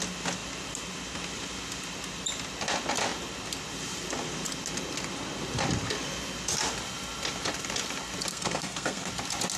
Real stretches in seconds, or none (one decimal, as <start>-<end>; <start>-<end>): 0.0-8.3; 9.1-9.6

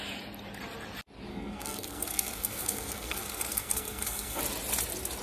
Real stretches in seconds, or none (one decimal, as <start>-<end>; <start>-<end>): 0.0-1.3; 4.4-5.2